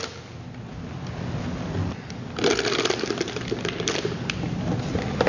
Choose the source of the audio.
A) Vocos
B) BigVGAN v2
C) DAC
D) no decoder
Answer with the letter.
D